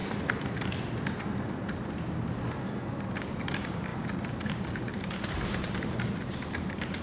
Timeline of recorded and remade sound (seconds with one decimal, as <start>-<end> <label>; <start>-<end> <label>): 0.0-3.9 recorded; 3.9-7.0 remade